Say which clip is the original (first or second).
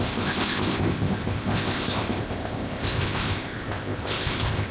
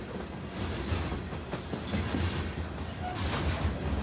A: second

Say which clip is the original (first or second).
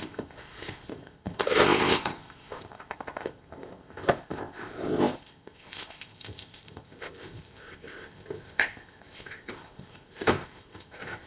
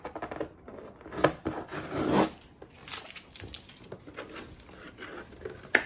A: second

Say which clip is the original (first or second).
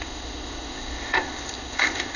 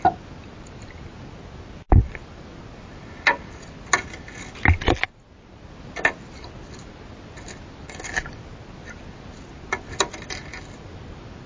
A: second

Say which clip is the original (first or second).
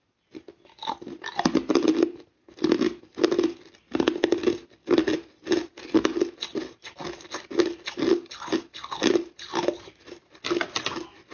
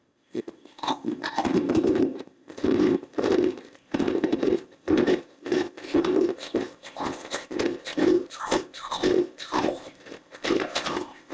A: first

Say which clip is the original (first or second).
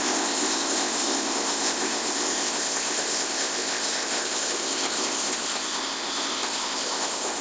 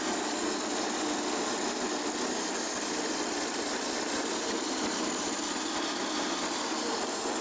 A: second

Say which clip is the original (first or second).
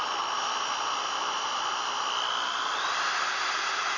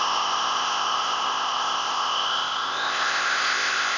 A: first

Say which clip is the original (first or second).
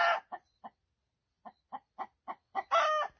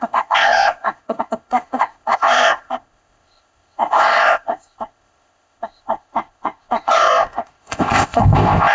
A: first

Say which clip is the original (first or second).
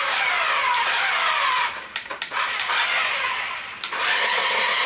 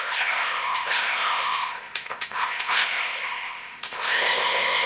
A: first